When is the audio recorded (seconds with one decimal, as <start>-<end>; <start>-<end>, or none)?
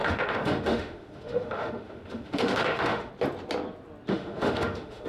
3.1-4.1